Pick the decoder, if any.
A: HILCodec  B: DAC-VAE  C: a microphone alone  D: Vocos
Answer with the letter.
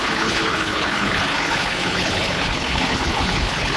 A